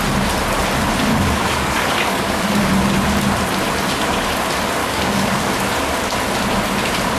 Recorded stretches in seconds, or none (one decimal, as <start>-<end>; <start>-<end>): 0.0-1.1; 2.7-4.8; 5.5-7.2